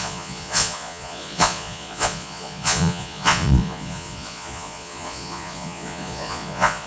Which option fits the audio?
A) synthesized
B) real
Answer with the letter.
A